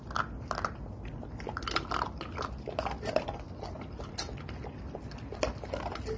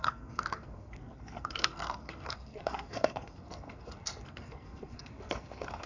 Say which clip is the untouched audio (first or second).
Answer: first